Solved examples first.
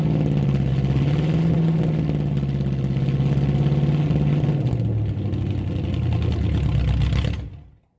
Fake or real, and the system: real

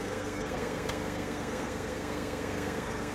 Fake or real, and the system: fake, codec, SNAC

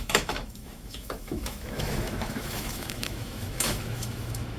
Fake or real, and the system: fake, autoencoder, DAC-VAE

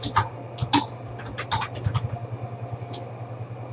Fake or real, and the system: real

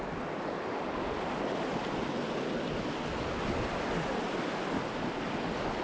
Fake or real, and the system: real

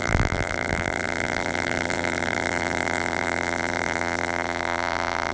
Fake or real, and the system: fake, vocoder, BigVGAN v2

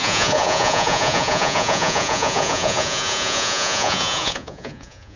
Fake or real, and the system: fake, vocoder, Vocos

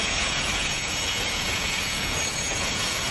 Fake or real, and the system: fake, vocoder, Vocos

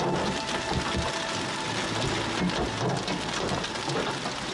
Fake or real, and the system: real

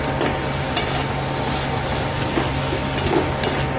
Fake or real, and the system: real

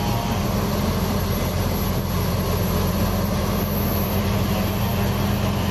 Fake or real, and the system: real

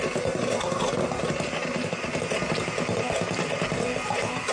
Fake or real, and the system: real